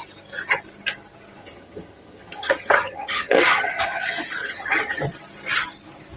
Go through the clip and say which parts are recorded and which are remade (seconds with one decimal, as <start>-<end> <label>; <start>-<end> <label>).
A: 0.0-1.4 recorded; 1.4-3.7 remade; 3.7-4.4 recorded; 4.4-5.0 remade; 5.0-6.2 recorded